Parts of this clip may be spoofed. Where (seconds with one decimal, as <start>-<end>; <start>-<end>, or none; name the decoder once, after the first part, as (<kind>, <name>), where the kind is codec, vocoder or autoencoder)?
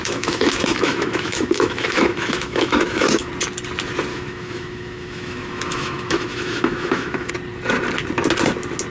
0.0-3.3 (autoencoder, DAC-VAE); 4.1-7.3